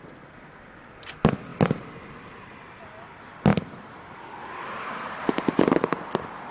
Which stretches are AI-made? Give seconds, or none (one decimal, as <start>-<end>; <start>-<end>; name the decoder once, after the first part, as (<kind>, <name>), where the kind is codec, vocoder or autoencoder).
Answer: 1.5-2.5 (vocoder, BigVGAN v2)